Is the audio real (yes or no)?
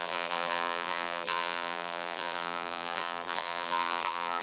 no